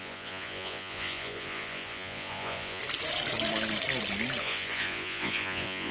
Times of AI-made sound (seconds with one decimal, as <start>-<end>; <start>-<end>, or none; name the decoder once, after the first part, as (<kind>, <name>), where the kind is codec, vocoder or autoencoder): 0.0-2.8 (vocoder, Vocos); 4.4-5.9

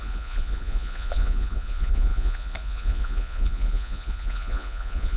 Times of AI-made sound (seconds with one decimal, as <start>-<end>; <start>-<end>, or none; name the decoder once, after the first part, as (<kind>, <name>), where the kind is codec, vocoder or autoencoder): 0.0-5.2 (vocoder, Vocos)

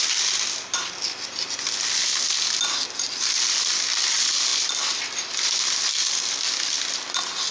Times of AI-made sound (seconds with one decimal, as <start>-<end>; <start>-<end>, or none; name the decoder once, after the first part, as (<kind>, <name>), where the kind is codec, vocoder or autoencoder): none